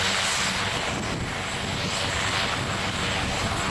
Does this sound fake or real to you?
real